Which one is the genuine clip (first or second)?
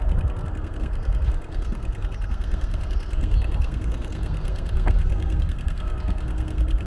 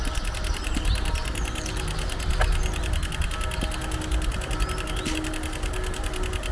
second